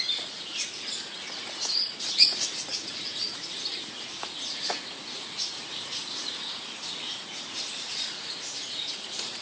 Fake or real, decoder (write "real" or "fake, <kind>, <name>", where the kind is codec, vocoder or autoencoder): fake, vocoder, Vocos